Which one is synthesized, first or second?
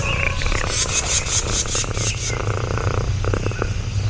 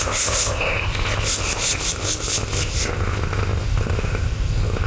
second